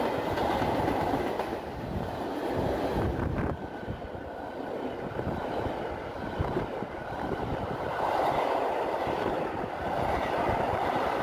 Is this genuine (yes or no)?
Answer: yes